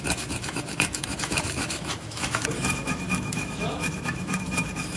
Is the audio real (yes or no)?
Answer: no